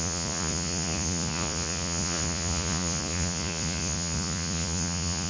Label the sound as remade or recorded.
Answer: remade